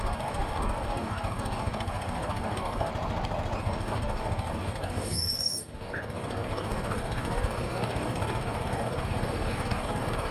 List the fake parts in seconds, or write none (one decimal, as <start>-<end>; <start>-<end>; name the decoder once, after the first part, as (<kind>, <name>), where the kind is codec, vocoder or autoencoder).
0.0-2.9 (codec, DAC); 3.6-10.3